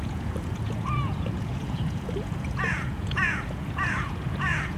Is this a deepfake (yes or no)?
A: yes